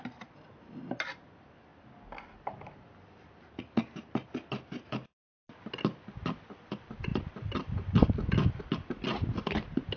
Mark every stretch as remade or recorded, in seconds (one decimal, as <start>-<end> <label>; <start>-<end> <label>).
0.0-10.0 recorded